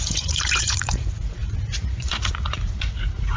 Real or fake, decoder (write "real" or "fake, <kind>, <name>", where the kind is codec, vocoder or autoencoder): fake, vocoder, Vocos